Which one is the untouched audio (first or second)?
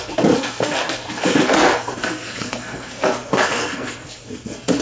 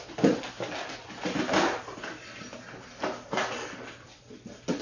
second